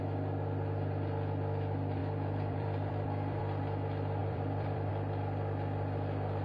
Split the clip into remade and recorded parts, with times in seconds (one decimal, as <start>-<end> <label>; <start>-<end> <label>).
0.0-2.0 recorded; 2.0-3.4 remade; 3.4-4.2 recorded; 4.2-4.9 remade; 4.9-6.4 recorded